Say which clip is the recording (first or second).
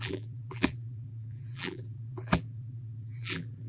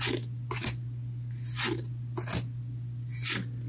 second